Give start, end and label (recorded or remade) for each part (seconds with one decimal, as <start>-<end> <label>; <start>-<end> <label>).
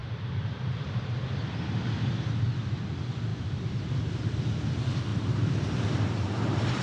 0.0-1.2 remade; 1.2-5.1 recorded; 5.1-6.8 remade